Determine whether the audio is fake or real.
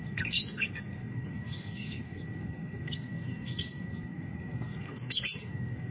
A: fake